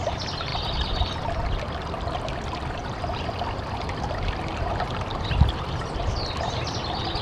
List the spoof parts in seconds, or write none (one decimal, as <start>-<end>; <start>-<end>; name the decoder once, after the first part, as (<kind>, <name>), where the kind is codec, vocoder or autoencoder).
none